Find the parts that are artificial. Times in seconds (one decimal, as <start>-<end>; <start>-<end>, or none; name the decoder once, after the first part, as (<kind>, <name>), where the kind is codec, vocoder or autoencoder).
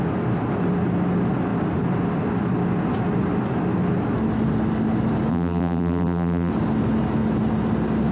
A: 5.3-6.5 (vocoder, BigVGAN v2)